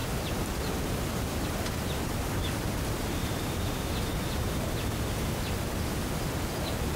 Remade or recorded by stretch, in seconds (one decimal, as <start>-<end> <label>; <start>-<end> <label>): 0.0-7.0 remade